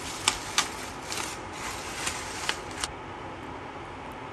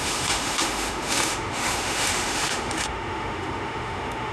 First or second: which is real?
first